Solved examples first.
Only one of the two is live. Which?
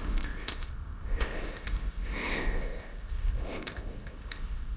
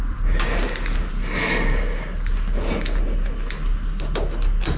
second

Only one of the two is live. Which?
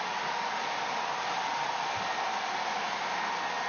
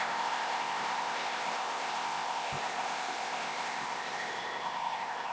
first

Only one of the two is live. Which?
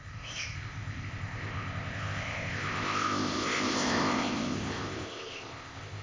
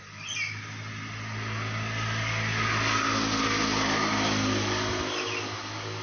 second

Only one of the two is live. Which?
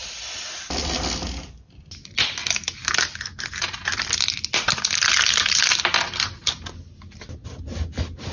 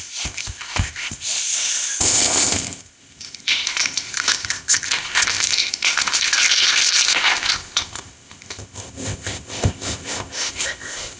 first